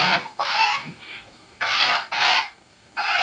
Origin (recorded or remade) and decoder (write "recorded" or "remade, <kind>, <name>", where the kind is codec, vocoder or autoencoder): remade, codec, DAC